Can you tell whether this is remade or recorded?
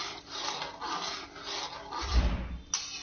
recorded